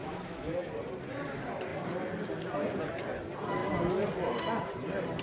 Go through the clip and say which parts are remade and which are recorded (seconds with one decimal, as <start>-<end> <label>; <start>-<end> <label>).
0.0-0.7 remade; 0.7-5.2 recorded